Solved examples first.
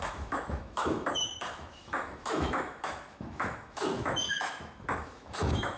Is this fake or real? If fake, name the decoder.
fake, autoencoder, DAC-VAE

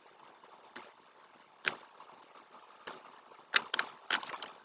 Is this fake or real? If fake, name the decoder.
real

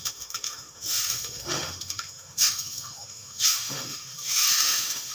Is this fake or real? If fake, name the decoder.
fake, autoencoder, DAC-VAE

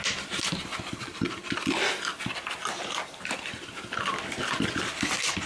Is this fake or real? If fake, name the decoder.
real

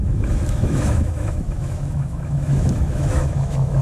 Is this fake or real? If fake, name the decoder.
fake, autoencoder, DAC-VAE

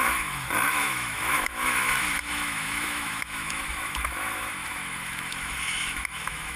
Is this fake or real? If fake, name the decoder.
fake, autoencoder, DAC-VAE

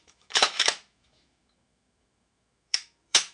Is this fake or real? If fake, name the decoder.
fake, autoencoder, DAC-VAE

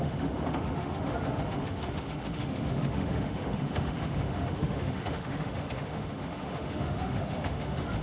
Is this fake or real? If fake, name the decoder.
fake, autoencoder, DAC-VAE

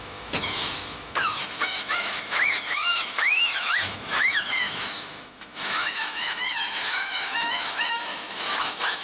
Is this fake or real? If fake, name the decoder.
fake, autoencoder, DAC-VAE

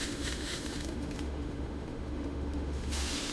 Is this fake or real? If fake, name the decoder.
fake, autoencoder, DAC-VAE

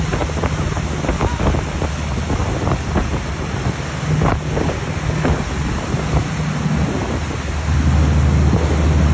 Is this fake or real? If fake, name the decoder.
real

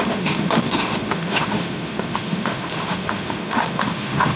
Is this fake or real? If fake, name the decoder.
fake, autoencoder, DAC-VAE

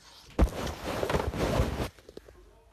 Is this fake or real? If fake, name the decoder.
real